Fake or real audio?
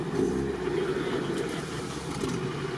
fake